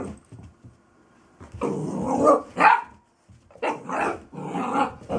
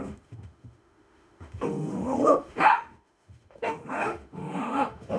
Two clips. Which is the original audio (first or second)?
first